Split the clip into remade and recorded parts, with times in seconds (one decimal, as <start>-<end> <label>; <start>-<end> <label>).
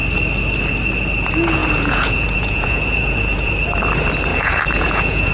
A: 0.0-1.6 recorded; 1.6-3.5 remade; 3.5-4.3 recorded; 4.3-5.3 remade